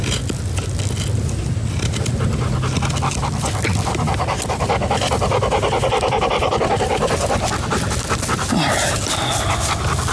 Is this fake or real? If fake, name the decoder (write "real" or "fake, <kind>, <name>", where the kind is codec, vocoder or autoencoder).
real